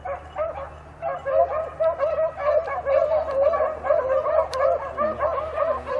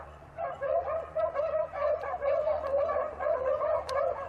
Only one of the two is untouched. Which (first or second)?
first